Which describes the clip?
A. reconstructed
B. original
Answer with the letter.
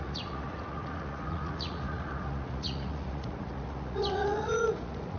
A